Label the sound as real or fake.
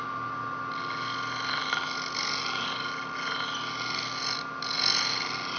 real